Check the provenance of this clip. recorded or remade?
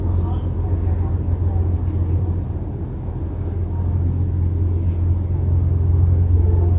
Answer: recorded